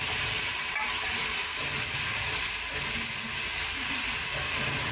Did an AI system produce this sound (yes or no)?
no